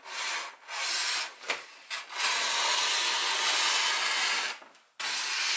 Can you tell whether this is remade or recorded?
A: recorded